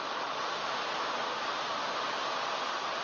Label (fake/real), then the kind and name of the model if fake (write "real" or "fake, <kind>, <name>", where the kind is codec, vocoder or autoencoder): real